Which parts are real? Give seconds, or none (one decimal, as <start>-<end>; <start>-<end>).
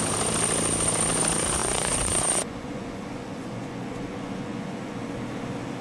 0.0-1.6; 5.0-5.8